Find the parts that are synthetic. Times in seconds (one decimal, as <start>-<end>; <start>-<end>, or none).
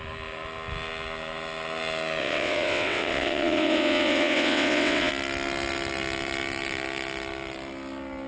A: 2.2-5.1